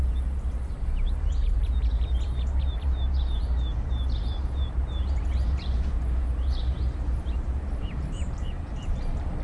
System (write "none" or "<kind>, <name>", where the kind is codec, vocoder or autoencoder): vocoder, BigVGAN v2